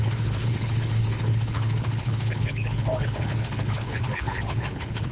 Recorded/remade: remade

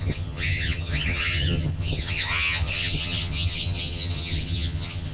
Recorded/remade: remade